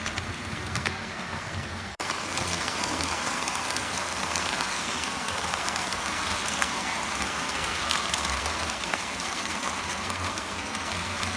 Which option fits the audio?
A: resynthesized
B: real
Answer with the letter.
A